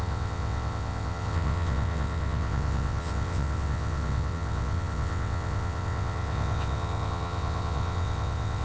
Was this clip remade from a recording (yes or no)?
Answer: yes